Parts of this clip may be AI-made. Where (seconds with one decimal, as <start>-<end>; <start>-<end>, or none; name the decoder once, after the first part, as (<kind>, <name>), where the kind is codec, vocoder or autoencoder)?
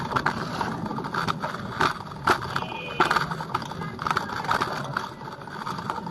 none